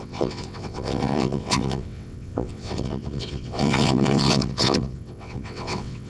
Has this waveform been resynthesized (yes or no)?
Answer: yes